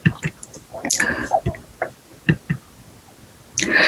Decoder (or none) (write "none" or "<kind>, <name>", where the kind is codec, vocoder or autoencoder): none